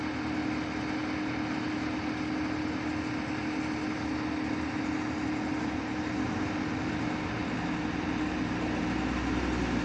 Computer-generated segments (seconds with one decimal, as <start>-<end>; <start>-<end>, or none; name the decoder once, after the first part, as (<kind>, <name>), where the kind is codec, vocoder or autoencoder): none